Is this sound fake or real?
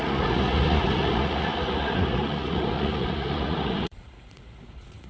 fake